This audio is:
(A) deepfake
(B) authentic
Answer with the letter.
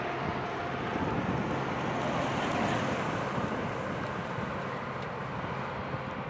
B